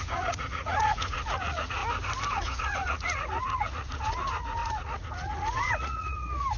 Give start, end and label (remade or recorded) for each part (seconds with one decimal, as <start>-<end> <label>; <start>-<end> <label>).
0.0-1.8 remade; 1.8-2.3 recorded; 2.3-6.6 remade